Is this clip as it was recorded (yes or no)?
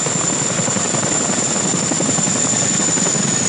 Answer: yes